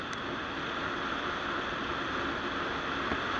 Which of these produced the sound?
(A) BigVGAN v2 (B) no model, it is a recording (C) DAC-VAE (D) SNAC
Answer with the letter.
B